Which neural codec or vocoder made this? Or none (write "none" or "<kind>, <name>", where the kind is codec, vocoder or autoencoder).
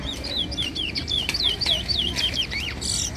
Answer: none